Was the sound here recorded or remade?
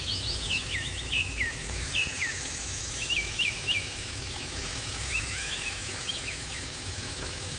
remade